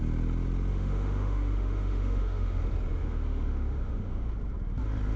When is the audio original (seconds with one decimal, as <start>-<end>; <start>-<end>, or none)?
0.0-0.7; 2.6-3.0; 4.3-5.2